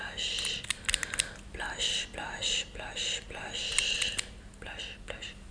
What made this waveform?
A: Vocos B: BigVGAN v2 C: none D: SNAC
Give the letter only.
C